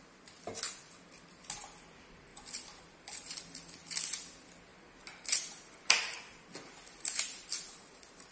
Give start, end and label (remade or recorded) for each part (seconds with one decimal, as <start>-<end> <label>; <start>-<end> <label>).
0.0-2.3 recorded; 2.3-3.9 remade; 3.9-4.7 recorded; 4.7-6.2 remade; 6.2-8.3 recorded